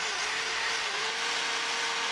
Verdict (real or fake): real